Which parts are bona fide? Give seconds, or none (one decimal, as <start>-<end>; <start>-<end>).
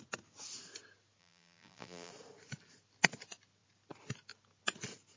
0.0-1.2; 2.1-5.2